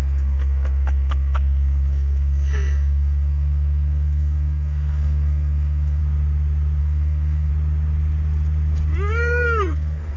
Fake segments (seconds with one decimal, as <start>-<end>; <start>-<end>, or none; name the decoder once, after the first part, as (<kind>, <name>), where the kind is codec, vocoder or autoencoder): 0.0-6.0 (codec, SNAC); 6.8-7.5; 9.1-10.2

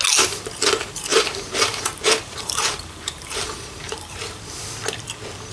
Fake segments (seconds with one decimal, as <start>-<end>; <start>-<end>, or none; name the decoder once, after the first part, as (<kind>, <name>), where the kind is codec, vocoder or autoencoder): 1.1-4.4 (vocoder, BigVGAN v2)

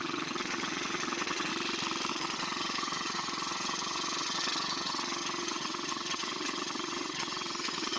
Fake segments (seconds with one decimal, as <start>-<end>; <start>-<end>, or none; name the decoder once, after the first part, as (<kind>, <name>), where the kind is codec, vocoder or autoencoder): 0.0-1.5 (vocoder, HiFi-GAN); 2.1-8.0

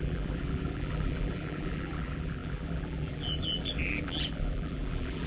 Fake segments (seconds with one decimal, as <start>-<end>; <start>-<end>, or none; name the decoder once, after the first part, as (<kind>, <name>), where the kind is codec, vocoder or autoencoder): 0.0-5.3 (vocoder, BigVGAN v2)

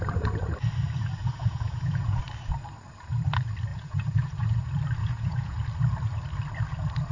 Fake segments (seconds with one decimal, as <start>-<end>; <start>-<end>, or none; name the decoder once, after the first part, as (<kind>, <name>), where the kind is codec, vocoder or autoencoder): 1.2-2.2 (vocoder, Vocos); 3.7-4.6; 5.0-5.6

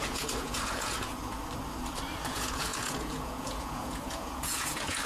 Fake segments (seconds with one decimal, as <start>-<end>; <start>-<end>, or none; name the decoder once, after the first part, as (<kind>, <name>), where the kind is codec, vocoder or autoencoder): 0.0-1.2 (vocoder, Vocos); 2.3-5.1

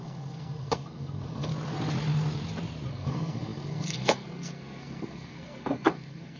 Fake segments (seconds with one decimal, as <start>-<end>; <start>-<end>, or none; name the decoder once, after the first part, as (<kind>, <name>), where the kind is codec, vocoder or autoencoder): 0.0-1.5 (codec, SNAC); 2.9-6.4

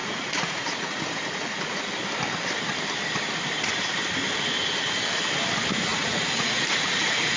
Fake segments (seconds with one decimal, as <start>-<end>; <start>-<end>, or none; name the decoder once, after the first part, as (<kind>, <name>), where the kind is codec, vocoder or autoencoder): 0.0-1.9 (vocoder, Vocos); 5.9-7.4